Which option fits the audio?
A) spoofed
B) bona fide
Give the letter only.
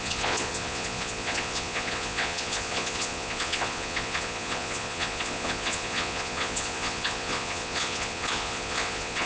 A